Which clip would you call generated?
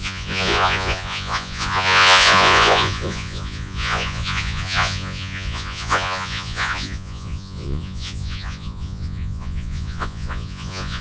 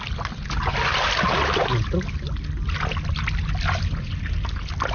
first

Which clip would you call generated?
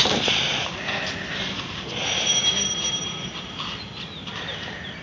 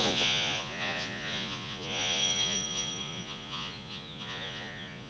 second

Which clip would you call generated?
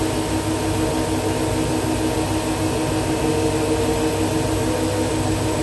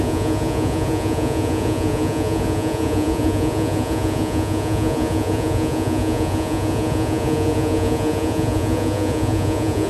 second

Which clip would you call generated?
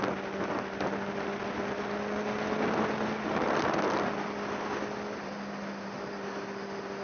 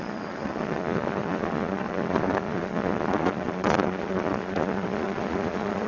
second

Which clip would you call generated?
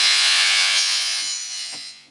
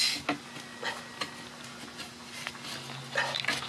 first